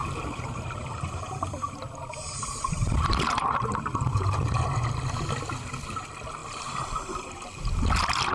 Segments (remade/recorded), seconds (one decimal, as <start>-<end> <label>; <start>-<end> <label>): 0.0-4.7 remade; 4.7-6.4 recorded; 6.4-7.6 remade; 7.6-8.3 recorded